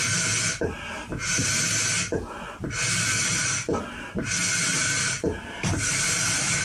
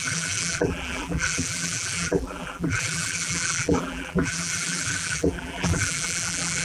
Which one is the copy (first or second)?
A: second